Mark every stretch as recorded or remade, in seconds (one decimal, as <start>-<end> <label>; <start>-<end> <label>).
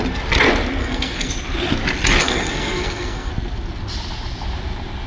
0.0-0.8 recorded; 0.8-1.3 remade; 1.3-2.2 recorded; 2.2-3.3 remade; 3.3-5.1 recorded